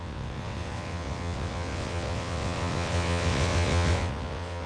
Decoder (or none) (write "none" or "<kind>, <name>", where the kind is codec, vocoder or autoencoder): vocoder, WaveNeXt